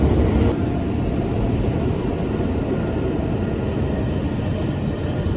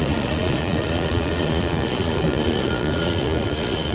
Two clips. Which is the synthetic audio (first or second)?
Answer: second